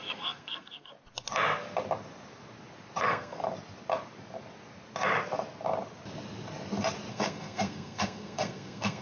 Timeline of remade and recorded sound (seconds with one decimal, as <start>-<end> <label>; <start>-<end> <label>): 0.0-0.9 remade; 0.9-3.0 recorded; 3.0-3.4 remade; 3.4-7.1 recorded; 7.1-9.0 remade